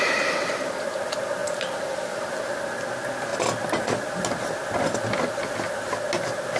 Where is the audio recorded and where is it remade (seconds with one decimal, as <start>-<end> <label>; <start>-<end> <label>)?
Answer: 0.0-6.6 recorded